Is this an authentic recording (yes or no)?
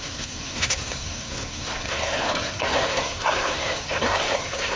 no